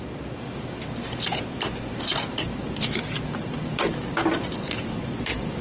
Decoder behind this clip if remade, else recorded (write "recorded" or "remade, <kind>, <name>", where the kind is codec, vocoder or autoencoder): recorded